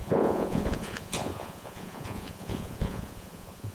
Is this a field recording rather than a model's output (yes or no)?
no